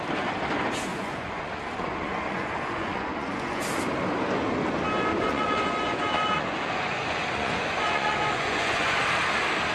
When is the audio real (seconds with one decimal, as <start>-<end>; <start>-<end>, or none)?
0.0-0.9; 3.6-5.1; 9.0-9.7